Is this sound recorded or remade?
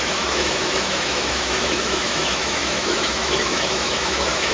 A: remade